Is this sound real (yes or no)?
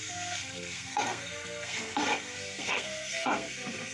no